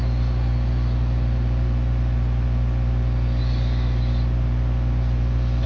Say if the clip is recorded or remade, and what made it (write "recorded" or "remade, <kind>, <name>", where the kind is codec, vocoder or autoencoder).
recorded